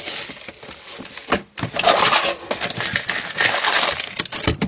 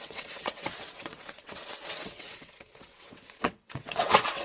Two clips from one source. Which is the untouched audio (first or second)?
first